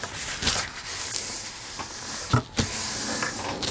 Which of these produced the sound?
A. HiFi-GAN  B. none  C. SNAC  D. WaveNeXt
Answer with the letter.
B